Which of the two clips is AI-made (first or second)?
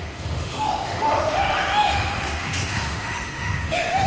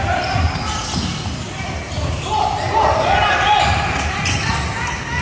first